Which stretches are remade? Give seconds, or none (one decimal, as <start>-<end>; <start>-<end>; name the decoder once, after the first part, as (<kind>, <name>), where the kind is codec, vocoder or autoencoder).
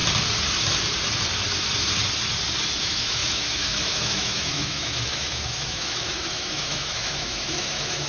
2.8-8.1 (autoencoder, DAC-VAE)